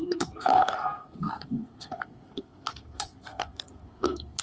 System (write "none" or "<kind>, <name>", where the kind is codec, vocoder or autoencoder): codec, SNAC